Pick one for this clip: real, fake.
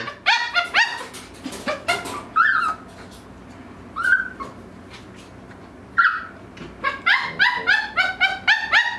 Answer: real